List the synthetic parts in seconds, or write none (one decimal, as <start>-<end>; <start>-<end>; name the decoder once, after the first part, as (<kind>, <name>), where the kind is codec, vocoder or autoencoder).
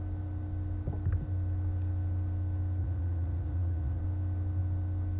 2.8-4.0 (vocoder, Vocos)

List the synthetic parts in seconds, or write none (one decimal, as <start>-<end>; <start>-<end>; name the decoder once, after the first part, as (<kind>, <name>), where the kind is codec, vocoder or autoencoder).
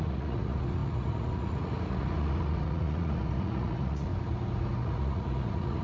0.0-4.1 (vocoder, Vocos); 4.8-5.8